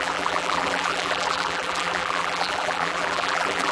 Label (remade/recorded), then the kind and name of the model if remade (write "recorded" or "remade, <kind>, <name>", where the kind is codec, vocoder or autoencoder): remade, vocoder, BigVGAN v2